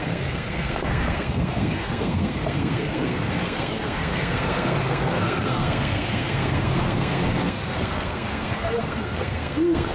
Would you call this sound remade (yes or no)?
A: yes